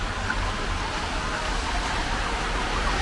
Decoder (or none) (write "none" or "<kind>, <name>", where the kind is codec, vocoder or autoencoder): none